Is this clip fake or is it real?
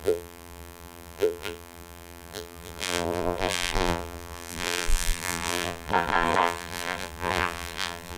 fake